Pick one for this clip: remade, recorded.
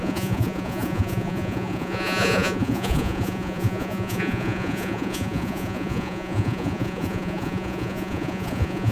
remade